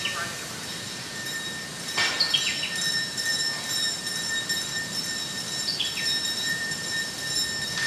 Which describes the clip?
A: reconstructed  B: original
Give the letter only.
A